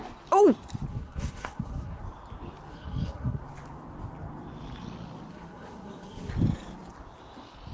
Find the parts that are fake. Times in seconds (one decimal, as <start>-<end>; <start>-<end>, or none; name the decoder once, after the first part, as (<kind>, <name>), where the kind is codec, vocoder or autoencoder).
0.9-2.0 (codec, SNAC); 2.7-3.4; 5.3-6.3